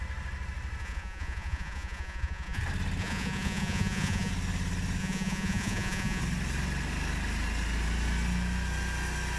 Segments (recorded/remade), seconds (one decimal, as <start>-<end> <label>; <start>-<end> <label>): 0.0-0.8 recorded; 0.8-2.6 remade; 2.6-3.0 recorded; 3.0-4.3 remade; 4.3-5.0 recorded; 5.0-6.2 remade; 6.2-9.4 recorded